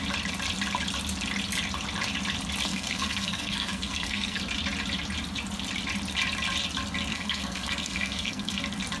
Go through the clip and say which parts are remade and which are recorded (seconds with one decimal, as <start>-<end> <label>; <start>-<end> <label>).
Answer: 0.0-2.7 recorded; 2.7-4.4 remade; 4.4-7.1 recorded; 7.1-8.6 remade; 8.6-9.0 recorded